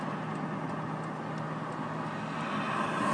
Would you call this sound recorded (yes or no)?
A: yes